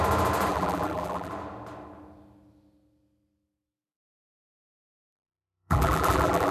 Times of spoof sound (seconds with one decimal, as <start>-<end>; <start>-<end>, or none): 0.5-1.3; 5.0-6.5